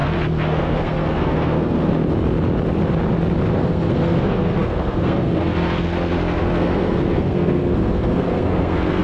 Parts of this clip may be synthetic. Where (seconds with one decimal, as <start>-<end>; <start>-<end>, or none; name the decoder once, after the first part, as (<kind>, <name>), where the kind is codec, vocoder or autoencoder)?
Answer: 0.0-1.9 (codec, SNAC); 3.5-9.0